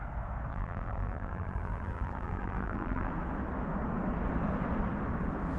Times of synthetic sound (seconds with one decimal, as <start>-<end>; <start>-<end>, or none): 0.5-3.1